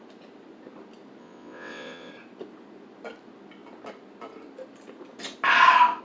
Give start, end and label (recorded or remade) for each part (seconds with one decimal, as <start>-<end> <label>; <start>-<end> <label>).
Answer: 0.0-1.2 recorded; 1.2-2.1 remade; 2.1-6.0 recorded